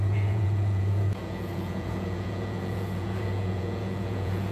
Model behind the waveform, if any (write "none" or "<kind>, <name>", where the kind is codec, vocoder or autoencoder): vocoder, Vocos